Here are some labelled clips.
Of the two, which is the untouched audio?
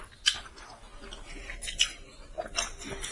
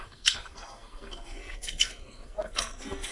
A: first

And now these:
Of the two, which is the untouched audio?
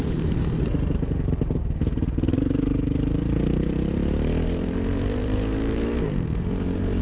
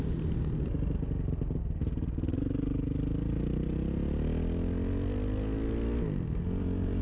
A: second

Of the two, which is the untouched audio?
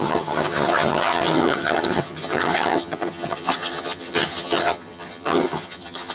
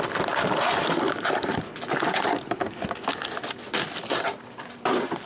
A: second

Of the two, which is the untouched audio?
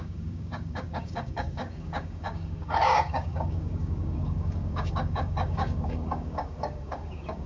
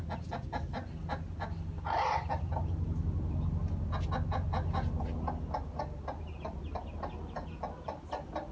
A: second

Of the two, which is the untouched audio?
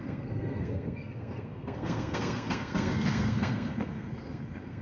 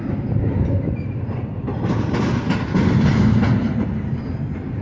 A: second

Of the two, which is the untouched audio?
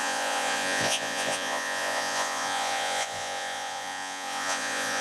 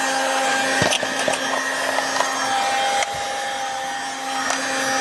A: second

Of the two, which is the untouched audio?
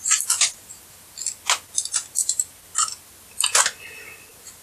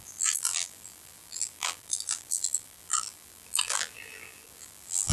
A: first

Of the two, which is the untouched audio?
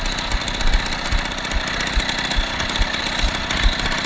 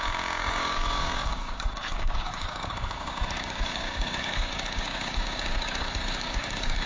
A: first